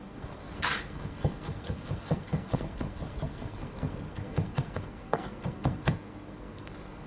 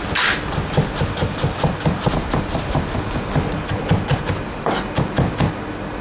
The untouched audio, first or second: second